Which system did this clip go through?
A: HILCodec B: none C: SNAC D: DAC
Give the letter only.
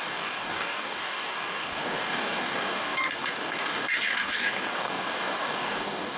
D